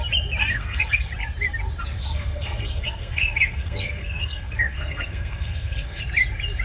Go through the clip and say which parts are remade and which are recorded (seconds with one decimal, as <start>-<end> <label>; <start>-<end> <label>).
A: 0.0-0.4 recorded; 0.4-1.1 remade; 1.1-2.0 recorded; 2.0-6.0 remade; 6.0-6.6 recorded